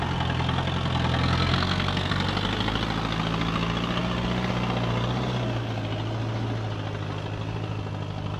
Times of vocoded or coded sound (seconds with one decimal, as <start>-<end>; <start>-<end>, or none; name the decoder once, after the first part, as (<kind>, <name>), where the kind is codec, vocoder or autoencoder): 1.5-2.1 (codec, SNAC)